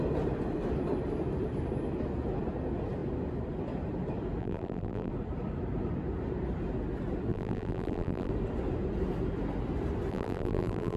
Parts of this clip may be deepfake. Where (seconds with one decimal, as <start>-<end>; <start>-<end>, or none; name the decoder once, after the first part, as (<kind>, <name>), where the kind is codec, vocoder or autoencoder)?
4.4-5.1 (vocoder, BigVGAN v2); 7.3-8.3; 10.1-11.0